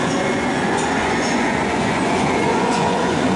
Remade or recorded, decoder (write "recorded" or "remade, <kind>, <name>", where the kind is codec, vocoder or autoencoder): remade, vocoder, Vocos